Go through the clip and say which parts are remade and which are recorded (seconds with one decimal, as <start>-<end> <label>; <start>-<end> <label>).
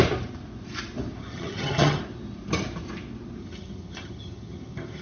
0.0-1.2 recorded; 1.2-2.0 remade; 2.0-3.4 recorded; 3.4-5.0 remade